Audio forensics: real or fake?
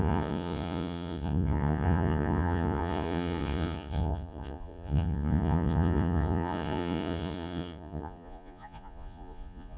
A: fake